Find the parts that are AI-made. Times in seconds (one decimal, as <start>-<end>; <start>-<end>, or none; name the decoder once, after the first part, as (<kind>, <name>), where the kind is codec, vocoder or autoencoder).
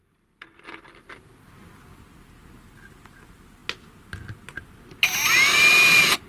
none